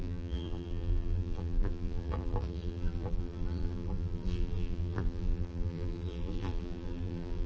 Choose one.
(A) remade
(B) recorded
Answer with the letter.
A